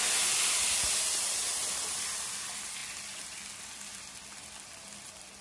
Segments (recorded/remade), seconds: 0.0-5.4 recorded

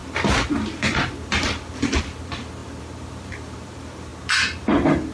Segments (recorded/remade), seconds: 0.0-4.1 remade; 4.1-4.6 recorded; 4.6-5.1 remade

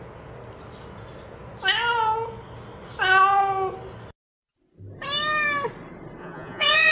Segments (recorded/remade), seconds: 0.0-6.2 recorded; 6.2-6.9 remade

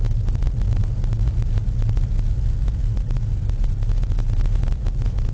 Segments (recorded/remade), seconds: 0.0-5.3 recorded

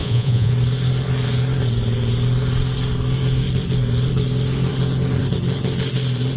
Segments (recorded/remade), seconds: 0.0-0.5 remade; 0.5-6.4 recorded

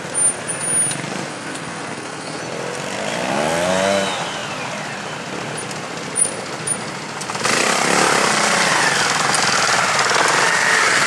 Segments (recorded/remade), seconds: 0.0-1.3 recorded; 1.3-2.4 remade; 2.4-11.1 recorded